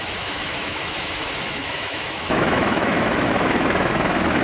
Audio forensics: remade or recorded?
remade